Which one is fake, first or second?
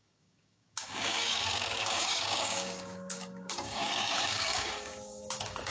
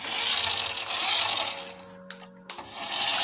first